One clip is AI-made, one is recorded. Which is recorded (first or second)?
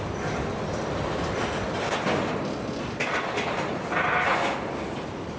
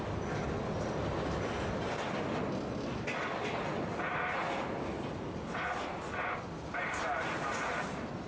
second